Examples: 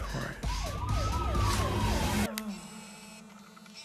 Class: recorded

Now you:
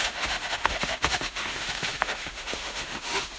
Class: remade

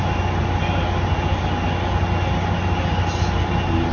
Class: recorded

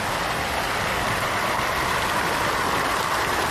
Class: recorded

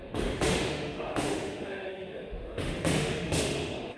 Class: remade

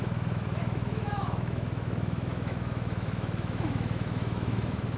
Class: remade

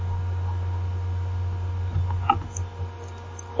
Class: recorded